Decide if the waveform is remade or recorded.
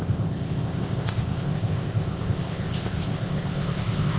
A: remade